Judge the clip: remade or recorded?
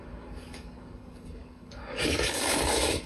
remade